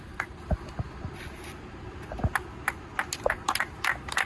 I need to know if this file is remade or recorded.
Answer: recorded